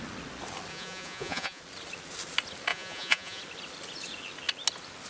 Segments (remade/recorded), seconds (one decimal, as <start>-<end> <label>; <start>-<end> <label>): 0.0-0.7 recorded; 0.7-1.6 remade; 1.6-2.7 recorded; 2.7-3.4 remade; 3.4-5.1 recorded